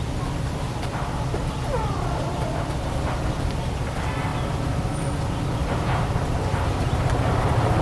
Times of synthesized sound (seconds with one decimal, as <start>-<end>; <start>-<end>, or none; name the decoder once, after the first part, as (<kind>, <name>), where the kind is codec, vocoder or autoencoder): none